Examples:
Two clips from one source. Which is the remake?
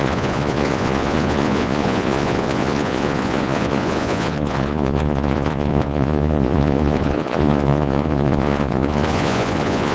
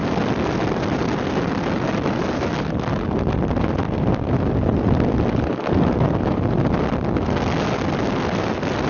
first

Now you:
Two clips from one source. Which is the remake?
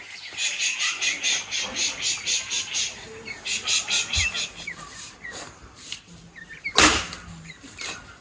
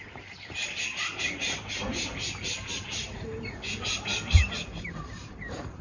second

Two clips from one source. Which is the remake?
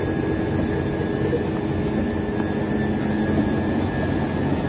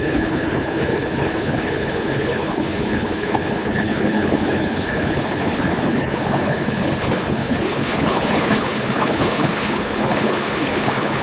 second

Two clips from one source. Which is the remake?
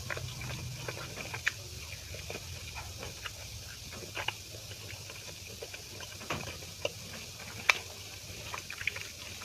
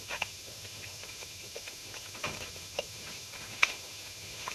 second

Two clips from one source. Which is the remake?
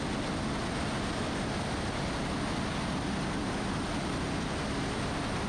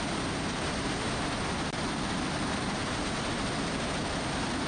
second